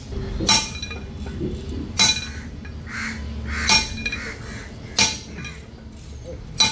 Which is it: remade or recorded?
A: recorded